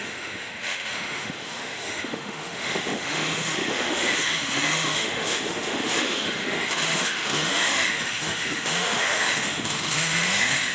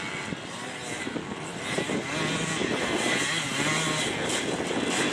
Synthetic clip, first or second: first